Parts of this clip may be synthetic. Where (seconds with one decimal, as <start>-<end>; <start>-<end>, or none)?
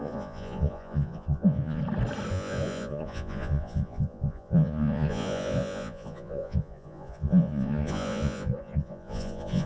0.0-1.8; 2.3-9.7